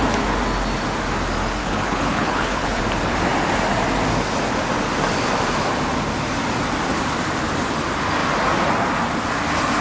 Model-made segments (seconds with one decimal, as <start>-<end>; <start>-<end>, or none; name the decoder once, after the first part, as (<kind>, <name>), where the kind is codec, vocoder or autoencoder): 1.6-2.8 (codec, HILCodec)

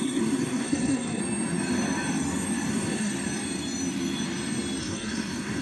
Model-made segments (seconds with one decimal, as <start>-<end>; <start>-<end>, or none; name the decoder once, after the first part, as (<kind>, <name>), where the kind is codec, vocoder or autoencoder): 0.0-1.2 (codec, SNAC); 2.7-3.1; 4.8-5.6

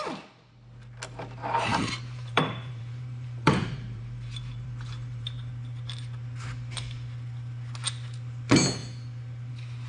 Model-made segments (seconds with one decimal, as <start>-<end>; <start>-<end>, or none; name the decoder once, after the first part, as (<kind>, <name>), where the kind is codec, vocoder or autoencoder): 1.7-5.5 (vocoder, BigVGAN v2)